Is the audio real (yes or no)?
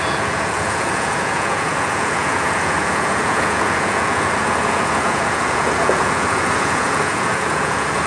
no